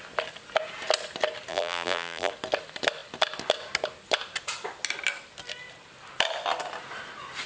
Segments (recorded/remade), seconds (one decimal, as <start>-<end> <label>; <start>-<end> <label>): 0.0-1.5 recorded; 1.5-2.3 remade; 2.3-7.5 recorded